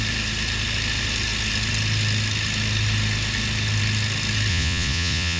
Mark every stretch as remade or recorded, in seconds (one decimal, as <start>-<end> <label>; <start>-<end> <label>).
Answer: 0.0-4.5 recorded; 4.5-5.4 remade